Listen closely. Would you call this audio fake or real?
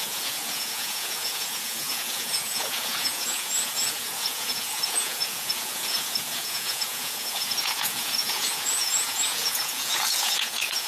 fake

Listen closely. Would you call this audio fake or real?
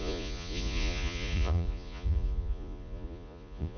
fake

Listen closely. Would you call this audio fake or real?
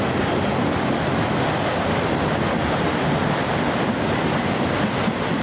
real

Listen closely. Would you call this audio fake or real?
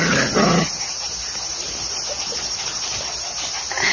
real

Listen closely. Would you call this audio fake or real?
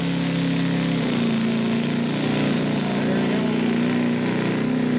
real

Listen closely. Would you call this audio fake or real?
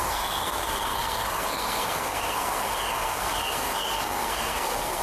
fake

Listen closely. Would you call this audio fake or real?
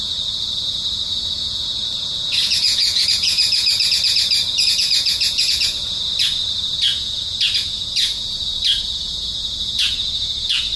fake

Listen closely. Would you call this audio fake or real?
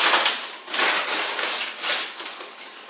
real